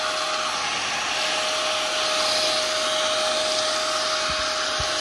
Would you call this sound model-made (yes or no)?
no